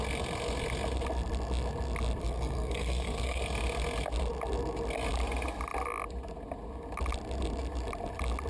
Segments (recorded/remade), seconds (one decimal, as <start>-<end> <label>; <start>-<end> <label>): 0.0-2.2 recorded; 2.2-3.4 remade; 3.4-8.5 recorded